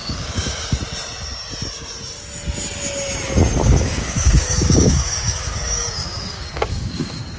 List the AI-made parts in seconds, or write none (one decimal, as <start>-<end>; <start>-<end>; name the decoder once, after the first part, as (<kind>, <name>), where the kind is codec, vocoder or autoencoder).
0.0-0.8 (codec, DAC); 3.6-7.4